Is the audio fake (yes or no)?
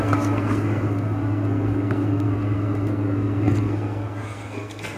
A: yes